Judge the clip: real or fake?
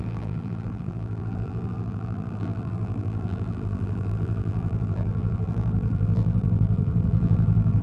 fake